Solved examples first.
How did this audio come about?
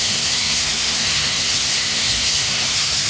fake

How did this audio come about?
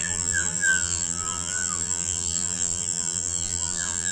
fake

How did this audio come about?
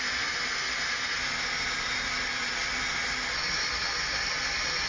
real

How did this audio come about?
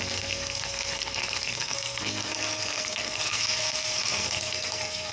fake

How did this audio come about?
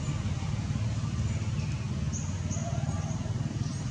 real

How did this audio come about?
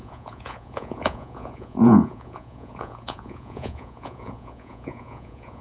fake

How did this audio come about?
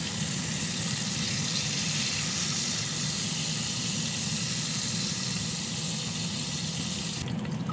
real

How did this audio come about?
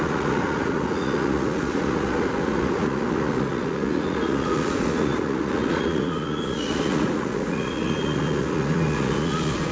fake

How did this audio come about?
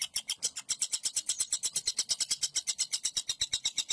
real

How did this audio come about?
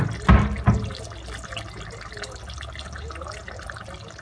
real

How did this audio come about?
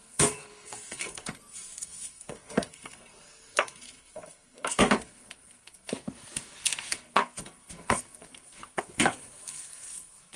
fake